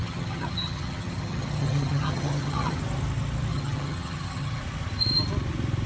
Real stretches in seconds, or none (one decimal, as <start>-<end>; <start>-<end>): 2.8-3.5; 4.6-5.9